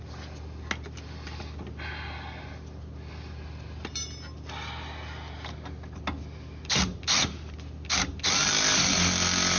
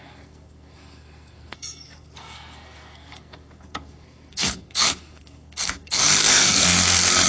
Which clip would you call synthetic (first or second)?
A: second